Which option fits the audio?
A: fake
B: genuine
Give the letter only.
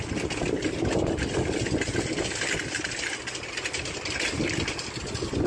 B